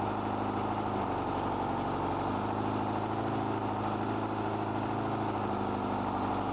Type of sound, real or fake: real